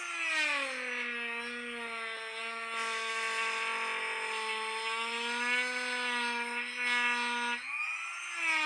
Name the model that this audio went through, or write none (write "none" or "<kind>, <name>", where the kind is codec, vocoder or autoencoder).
none